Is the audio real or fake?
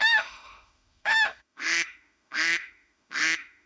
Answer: fake